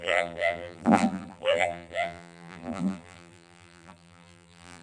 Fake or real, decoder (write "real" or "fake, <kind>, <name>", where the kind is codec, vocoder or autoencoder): fake, vocoder, BigVGAN v2